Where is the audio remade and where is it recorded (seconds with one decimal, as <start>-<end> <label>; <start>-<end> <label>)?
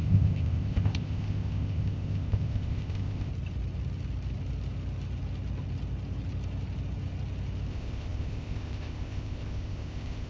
0.0-3.3 remade; 3.3-7.7 recorded; 7.7-10.3 remade